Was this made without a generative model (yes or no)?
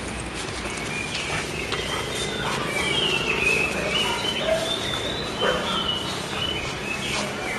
yes